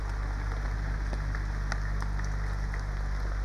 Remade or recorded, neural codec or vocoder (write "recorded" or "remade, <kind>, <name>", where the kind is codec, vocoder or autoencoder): recorded